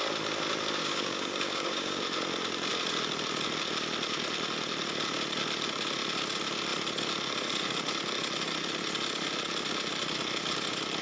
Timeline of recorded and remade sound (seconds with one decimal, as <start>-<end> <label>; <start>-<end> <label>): 0.0-0.8 recorded; 0.8-2.0 remade; 2.0-11.0 recorded